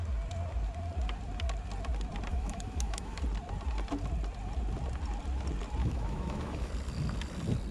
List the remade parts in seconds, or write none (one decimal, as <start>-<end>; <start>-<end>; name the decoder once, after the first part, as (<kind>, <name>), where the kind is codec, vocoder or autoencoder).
2.3-3.2 (autoencoder, DAC-VAE); 5.8-6.7